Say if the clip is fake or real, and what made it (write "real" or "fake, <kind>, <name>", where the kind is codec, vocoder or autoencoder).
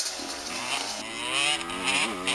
real